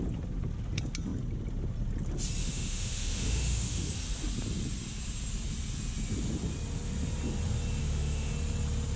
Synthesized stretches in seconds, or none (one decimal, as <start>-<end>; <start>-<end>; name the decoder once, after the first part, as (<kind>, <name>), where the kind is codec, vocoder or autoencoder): 2.4-3.9 (autoencoder, DAC-VAE); 7.8-8.3